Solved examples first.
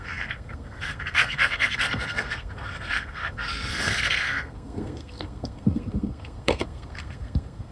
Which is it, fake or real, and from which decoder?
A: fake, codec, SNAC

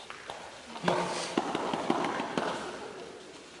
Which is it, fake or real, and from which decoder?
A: real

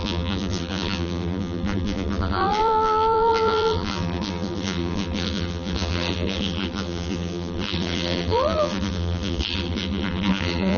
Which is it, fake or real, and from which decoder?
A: fake, vocoder, BigVGAN v2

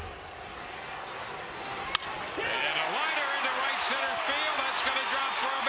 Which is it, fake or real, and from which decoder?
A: real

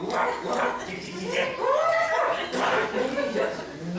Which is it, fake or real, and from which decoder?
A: real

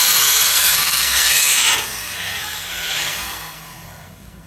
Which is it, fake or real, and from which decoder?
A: fake, codec, SNAC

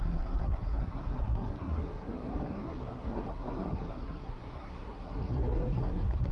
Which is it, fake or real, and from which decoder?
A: fake, codec, SNAC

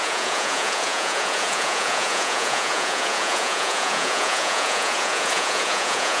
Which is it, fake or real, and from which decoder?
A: fake, vocoder, Vocos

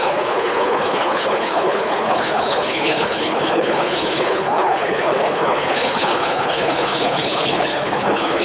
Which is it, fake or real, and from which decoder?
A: fake, codec, HILCodec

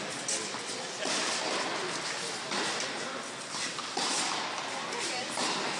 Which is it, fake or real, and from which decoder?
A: real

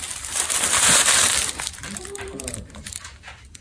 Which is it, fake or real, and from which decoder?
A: fake, vocoder, BigVGAN v2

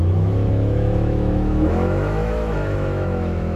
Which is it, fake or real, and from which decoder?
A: fake, autoencoder, DAC-VAE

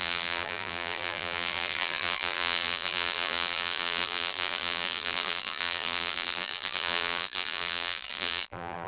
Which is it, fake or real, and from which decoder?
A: fake, vocoder, BigVGAN v2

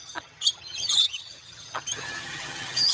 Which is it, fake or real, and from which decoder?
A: fake, vocoder, HiFi-GAN